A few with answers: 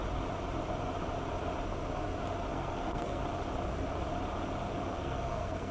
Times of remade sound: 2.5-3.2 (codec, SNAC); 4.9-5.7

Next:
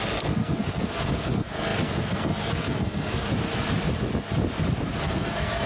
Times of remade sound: 0.0-3.3 (codec, SNAC); 5.0-5.7

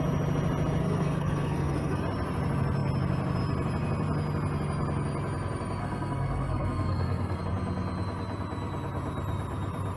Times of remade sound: 0.8-2.0 (codec, SNAC); 5.8-7.4

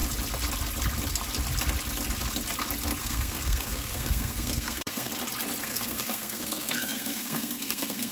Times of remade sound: 3.0-5.1 (codec, SNAC); 5.6-8.1

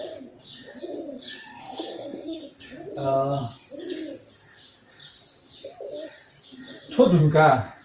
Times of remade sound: 1.6-2.4 (codec, SNAC)

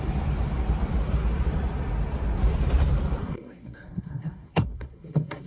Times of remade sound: 3.2-5.5 (codec, SNAC)